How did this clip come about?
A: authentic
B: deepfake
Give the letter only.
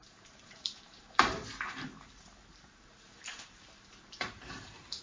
B